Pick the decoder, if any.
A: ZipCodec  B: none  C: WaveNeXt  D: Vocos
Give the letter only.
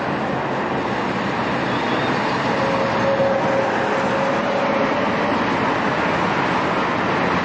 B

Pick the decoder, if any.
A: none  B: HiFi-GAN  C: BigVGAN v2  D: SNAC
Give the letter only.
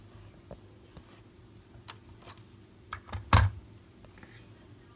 A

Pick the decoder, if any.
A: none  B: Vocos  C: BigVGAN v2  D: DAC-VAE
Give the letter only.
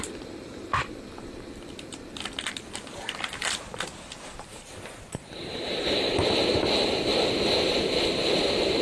C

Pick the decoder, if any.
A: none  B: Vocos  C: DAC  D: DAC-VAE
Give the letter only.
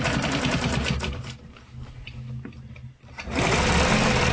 A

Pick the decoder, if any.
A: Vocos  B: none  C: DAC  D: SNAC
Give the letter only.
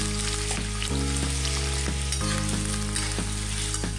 B